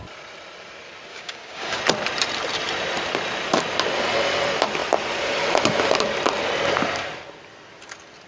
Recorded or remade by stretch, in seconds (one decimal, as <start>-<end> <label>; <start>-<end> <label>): 0.0-1.1 recorded; 1.1-1.8 remade; 1.8-8.3 recorded